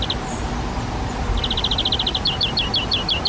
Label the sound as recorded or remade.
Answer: recorded